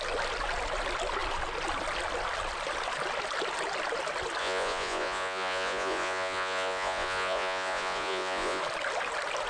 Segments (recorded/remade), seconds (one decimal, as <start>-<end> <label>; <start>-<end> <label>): 0.0-4.4 recorded; 4.4-8.6 remade; 8.6-9.5 recorded